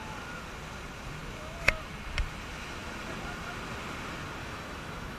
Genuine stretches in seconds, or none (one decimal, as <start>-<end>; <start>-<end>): 0.0-4.4